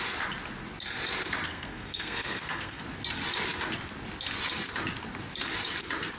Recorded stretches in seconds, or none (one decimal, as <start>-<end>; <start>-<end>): 0.0-1.5; 2.8-6.2

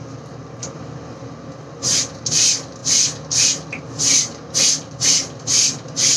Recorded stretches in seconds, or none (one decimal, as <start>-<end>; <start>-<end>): 0.0-6.2

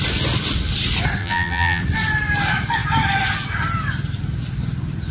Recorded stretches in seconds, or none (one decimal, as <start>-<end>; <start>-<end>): 0.0-1.2; 1.8-5.1

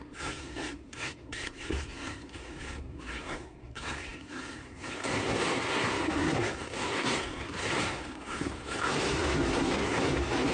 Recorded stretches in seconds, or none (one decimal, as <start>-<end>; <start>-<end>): none

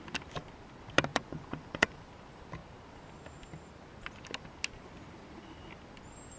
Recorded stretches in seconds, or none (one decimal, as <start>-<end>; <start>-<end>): 0.0-1.1; 2.1-6.4